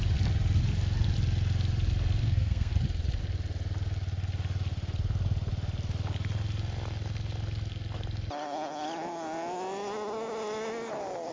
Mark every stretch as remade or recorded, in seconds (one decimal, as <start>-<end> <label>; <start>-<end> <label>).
0.0-2.2 recorded; 2.2-2.7 remade; 2.7-11.3 recorded